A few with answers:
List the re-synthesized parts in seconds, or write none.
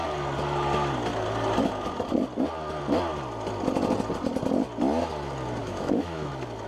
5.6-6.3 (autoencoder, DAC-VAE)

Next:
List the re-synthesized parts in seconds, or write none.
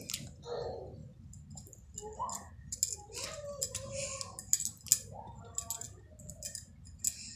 none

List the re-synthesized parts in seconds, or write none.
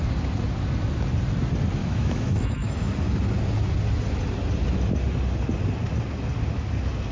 1.8-2.9 (autoencoder, DAC-VAE)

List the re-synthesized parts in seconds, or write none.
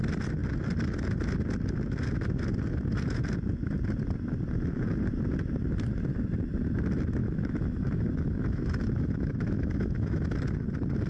7.2-10.2 (autoencoder, DAC-VAE)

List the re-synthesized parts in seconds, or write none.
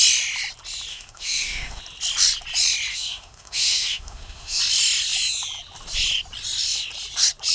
0.9-1.8 (autoencoder, DAC-VAE); 2.9-4.6